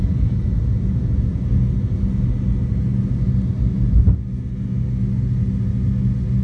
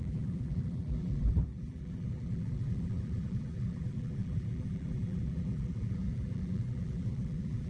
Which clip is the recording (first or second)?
first